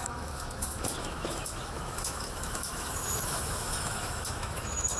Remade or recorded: remade